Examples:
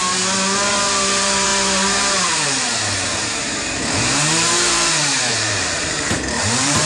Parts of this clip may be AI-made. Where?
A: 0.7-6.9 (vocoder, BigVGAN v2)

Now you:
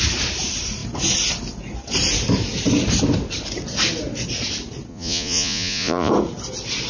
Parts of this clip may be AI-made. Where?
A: 4.9-6.1 (vocoder, Vocos)

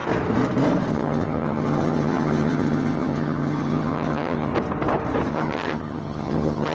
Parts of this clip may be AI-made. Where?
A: 0.9-4.5 (vocoder, HiFi-GAN); 5.3-6.7